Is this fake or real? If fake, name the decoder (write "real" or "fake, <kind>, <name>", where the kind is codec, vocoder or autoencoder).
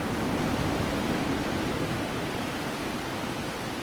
real